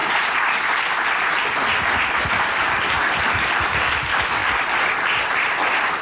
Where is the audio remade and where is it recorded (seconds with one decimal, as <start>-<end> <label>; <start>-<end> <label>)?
0.0-2.3 recorded; 2.3-4.4 remade; 4.4-5.3 recorded; 5.3-6.0 remade